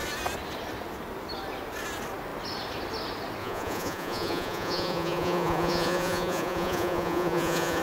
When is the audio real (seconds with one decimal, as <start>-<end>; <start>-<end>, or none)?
0.0-3.4